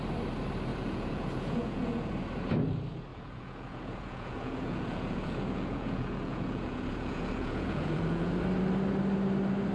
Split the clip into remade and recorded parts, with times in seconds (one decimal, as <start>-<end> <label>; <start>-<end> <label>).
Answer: 0.0-0.7 recorded; 0.7-2.1 remade; 2.1-3.1 recorded; 3.1-8.3 remade; 8.3-9.7 recorded